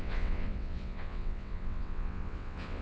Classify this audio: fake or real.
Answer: fake